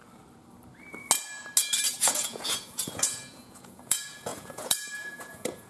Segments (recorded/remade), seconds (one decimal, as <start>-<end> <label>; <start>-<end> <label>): 0.0-1.9 recorded; 1.9-5.7 remade